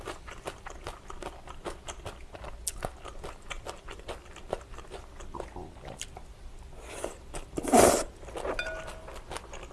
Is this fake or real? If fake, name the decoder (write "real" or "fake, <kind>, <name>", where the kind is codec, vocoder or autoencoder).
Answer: real